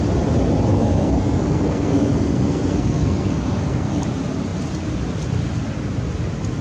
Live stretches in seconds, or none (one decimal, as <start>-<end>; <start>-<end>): 0.0-0.7; 4.0-6.6